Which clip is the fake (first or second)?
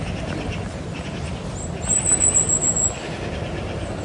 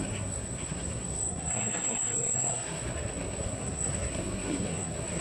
second